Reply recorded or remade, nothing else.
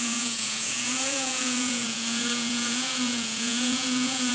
remade